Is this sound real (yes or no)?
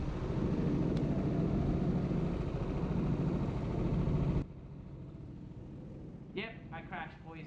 yes